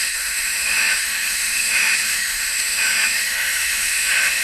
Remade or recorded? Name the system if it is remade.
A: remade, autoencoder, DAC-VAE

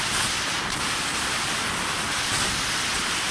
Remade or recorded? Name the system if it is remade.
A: recorded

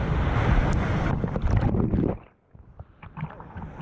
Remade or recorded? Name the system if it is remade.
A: recorded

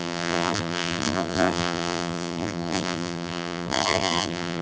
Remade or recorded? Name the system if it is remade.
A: remade, vocoder, BigVGAN v2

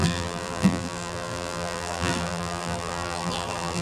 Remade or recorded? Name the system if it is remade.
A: remade, vocoder, BigVGAN v2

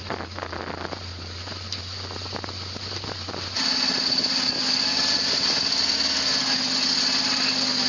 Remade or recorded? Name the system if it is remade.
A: recorded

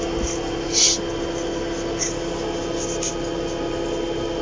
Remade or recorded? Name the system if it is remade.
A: recorded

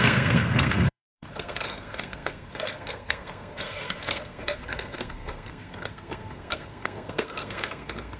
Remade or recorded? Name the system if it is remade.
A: remade, codec, SNAC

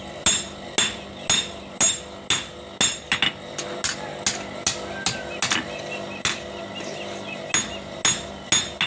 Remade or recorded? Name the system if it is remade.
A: recorded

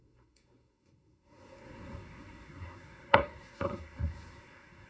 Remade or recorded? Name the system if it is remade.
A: remade, codec, SNAC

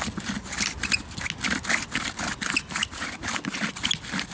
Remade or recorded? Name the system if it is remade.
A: recorded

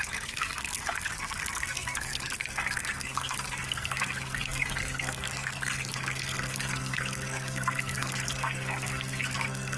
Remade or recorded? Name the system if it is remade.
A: remade, codec, SNAC